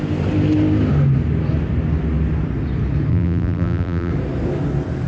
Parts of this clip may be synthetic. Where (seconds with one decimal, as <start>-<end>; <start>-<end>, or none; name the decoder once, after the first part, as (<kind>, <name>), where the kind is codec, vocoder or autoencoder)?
3.1-4.1 (vocoder, BigVGAN v2)